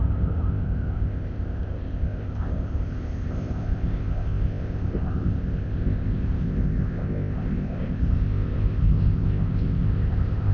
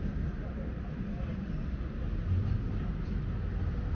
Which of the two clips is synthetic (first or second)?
first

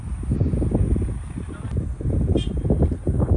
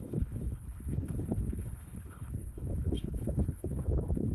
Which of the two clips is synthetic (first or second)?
second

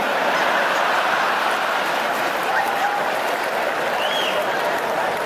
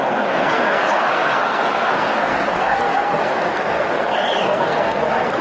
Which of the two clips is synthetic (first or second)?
second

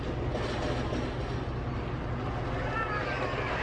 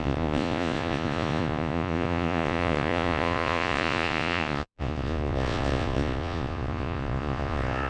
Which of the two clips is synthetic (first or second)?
second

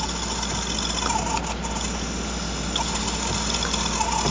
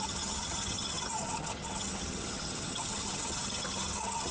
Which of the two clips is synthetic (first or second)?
second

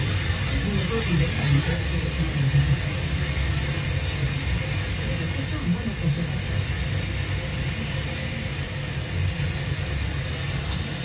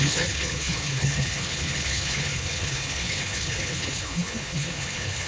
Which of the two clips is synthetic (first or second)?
second